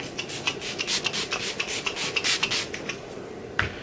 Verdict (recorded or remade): recorded